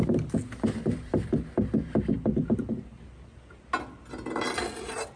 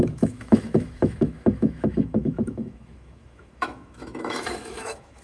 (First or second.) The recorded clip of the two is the first